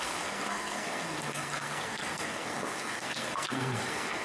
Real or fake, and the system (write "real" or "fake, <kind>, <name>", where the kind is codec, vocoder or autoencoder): fake, codec, SNAC